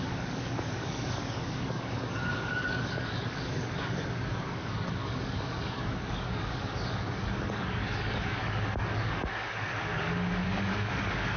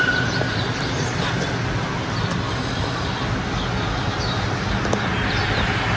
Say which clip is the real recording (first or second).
second